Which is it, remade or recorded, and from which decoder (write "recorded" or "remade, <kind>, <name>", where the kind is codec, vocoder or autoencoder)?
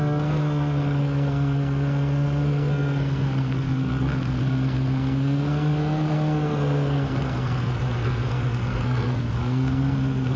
remade, codec, SNAC